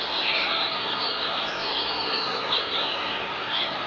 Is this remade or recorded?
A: remade